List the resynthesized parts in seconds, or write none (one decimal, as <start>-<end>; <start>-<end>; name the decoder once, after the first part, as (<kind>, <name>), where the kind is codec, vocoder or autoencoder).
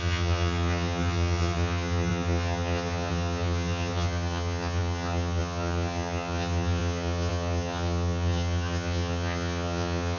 0.0-10.2 (vocoder, HiFi-GAN)